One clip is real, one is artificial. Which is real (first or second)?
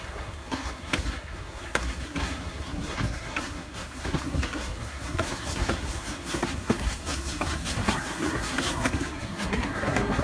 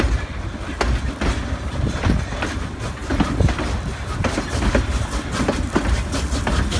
second